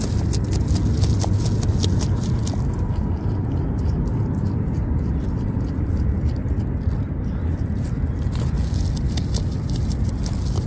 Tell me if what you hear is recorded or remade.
recorded